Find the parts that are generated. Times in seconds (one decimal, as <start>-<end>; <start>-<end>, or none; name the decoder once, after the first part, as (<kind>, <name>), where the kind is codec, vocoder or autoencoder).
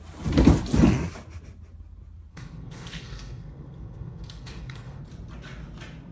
2.3-5.0 (codec, SNAC)